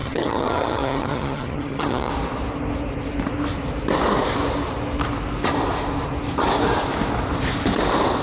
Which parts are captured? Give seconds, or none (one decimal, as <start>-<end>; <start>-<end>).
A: 2.1-8.2